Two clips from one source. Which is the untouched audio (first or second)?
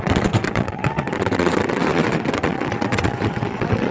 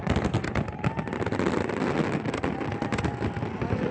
second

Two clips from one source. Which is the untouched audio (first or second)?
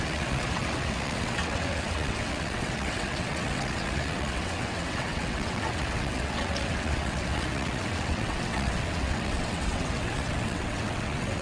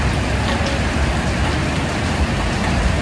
second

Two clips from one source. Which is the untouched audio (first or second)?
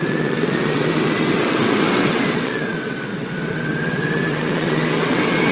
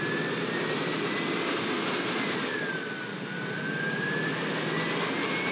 second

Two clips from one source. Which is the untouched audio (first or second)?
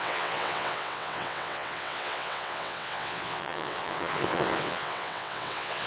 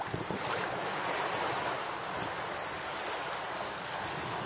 second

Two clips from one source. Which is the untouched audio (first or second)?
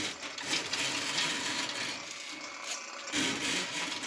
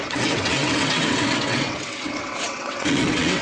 first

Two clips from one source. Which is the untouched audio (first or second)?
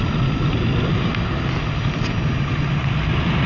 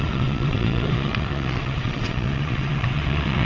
first